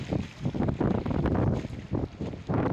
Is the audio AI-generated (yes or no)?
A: no